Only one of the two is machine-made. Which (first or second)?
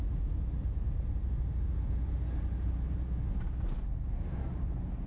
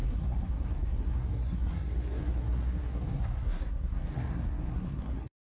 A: second